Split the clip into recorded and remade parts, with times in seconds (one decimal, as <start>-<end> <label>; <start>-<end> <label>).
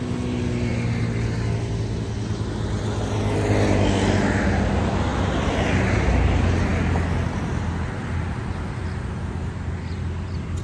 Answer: 0.0-10.6 recorded